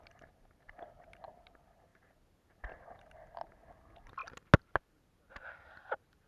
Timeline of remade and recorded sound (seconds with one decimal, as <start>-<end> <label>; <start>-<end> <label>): 0.0-6.3 recorded

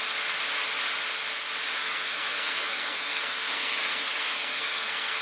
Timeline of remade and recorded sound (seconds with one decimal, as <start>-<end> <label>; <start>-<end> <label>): 0.0-1.8 recorded; 1.8-5.2 remade

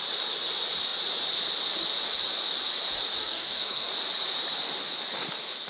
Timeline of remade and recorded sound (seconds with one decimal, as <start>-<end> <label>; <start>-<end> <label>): 0.0-3.2 recorded; 3.2-3.9 remade; 3.9-5.7 recorded

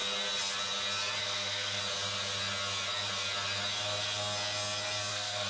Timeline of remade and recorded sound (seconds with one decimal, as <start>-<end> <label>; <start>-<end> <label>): 0.0-1.2 recorded; 1.2-1.8 remade; 1.8-5.1 recorded; 5.1-5.5 remade

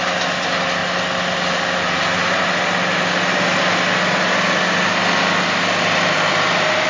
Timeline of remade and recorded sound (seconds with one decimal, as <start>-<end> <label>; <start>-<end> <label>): 0.0-6.9 recorded

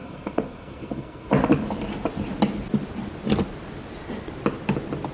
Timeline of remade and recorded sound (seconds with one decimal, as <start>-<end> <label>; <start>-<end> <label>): 0.0-1.3 remade; 1.3-5.1 recorded

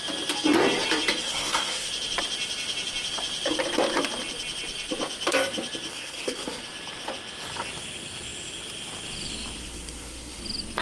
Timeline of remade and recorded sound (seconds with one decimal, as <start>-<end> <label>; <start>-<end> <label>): 0.0-1.2 recorded; 1.2-1.9 remade; 1.9-5.9 recorded; 5.9-6.6 remade; 6.6-9.6 recorded; 9.6-10.4 remade; 10.4-10.8 recorded

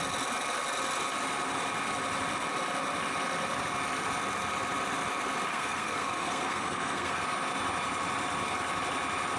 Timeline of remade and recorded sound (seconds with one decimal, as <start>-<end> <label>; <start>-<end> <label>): 0.0-5.5 recorded; 5.5-7.2 remade; 7.2-9.4 recorded